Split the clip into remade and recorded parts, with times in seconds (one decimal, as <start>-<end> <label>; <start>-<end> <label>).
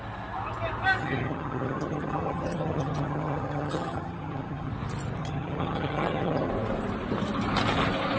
0.0-1.0 recorded; 1.0-4.7 remade; 4.7-5.2 recorded; 5.2-6.5 remade; 6.5-8.2 recorded